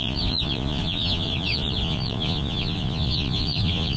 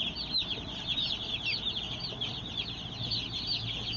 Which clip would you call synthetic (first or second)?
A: first